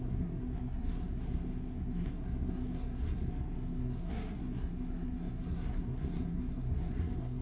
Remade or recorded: remade